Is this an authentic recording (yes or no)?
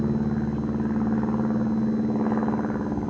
yes